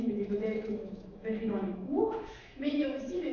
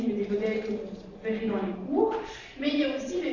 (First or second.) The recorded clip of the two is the second